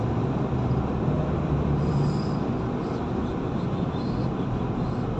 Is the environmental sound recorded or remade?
remade